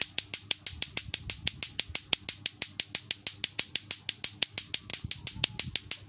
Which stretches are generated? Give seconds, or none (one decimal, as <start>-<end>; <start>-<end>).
none